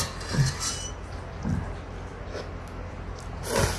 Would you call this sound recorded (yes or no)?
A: yes